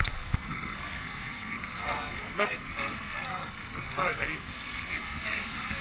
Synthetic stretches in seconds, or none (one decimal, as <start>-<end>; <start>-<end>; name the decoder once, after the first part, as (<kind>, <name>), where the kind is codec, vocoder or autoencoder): 0.0-5.8 (codec, SNAC)